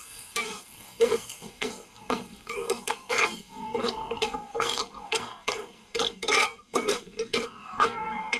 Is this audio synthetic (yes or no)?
yes